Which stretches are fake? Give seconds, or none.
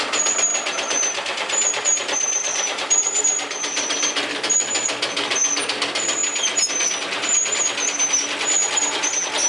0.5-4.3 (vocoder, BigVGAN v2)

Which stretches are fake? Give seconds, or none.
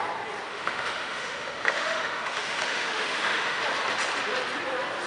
0.5-3.6 (autoencoder, DAC-VAE)